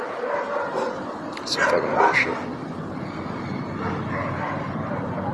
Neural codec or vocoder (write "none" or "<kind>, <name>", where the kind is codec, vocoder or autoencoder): none